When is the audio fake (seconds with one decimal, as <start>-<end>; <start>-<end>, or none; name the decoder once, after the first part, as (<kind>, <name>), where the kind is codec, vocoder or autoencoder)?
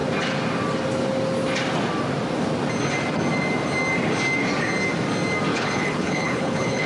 5.5-6.9 (codec, HILCodec)